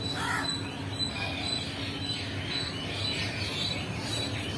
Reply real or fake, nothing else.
real